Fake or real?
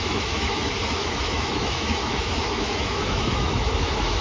fake